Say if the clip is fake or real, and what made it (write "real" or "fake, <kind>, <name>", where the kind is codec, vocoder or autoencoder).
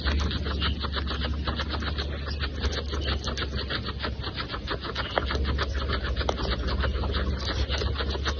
real